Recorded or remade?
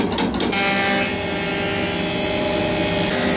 recorded